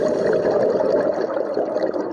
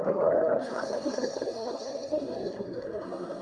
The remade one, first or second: second